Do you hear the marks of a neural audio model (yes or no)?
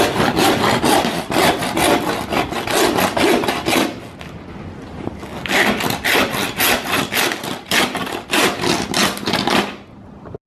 no